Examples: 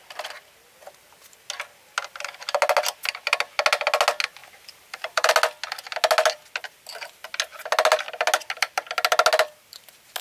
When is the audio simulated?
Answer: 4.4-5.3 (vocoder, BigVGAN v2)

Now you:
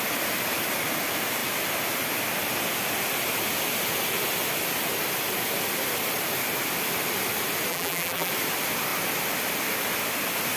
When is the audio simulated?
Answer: 7.7-8.3 (vocoder, BigVGAN v2)

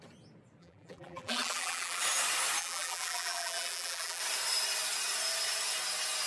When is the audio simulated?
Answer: 0.6-2.0 (vocoder, BigVGAN v2); 2.6-4.2

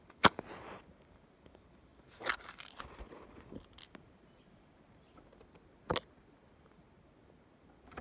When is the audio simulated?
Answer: none

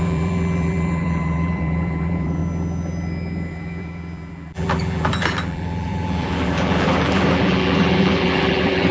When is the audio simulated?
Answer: 0.0-2.4 (vocoder, BigVGAN v2); 3.5-8.9

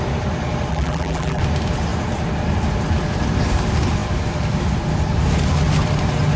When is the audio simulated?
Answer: 0.7-1.4 (vocoder, BigVGAN v2)

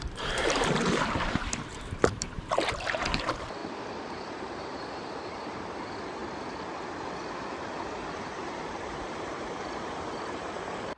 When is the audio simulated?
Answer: 0.0-3.6 (vocoder, BigVGAN v2); 4.1-6.2; 8.0-11.0